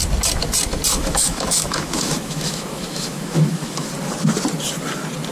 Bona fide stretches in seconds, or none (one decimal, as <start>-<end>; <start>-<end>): 0.0-0.9; 3.9-5.3